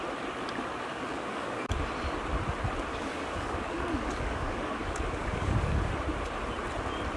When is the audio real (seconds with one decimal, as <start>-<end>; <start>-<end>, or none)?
0.0-0.9; 1.7-2.9; 5.9-7.2